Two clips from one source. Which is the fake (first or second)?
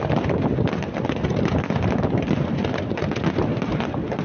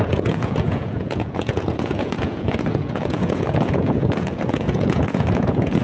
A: second